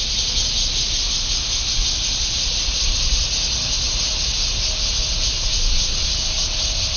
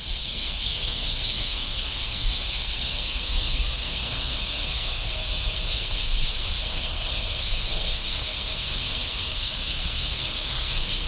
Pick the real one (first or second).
first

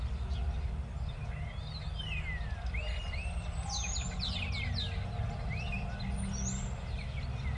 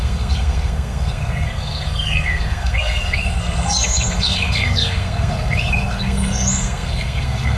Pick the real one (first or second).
first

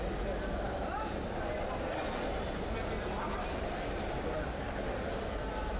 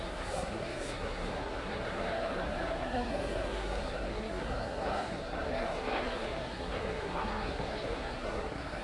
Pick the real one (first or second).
first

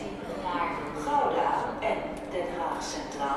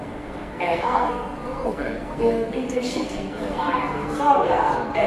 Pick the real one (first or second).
first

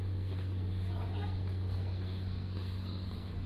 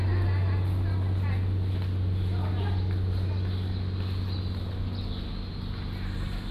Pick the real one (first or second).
second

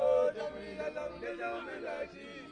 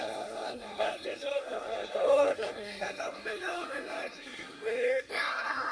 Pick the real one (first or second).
first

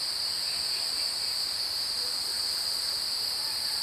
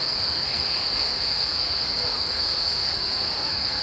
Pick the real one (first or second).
first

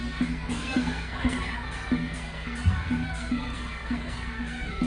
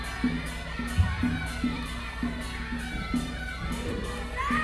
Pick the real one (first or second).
second